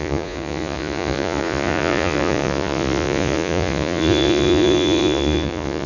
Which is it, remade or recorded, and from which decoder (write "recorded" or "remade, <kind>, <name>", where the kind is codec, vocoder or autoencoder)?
remade, vocoder, Vocos